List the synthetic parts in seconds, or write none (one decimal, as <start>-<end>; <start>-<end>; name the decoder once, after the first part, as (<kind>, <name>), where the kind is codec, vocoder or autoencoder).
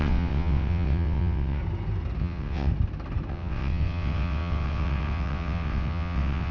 0.0-1.6 (vocoder, WaveNeXt); 2.2-2.7; 3.3-6.5